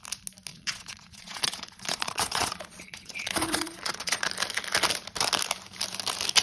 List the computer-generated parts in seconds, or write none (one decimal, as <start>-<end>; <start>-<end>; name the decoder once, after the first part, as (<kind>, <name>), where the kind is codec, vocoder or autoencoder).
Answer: 0.5-4.3 (vocoder, Vocos)